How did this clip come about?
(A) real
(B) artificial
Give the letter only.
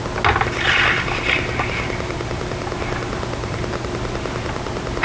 A